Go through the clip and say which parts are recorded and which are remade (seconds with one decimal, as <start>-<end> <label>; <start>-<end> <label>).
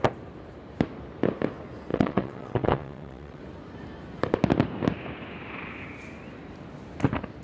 0.0-1.9 recorded; 1.9-3.4 remade; 3.4-7.4 recorded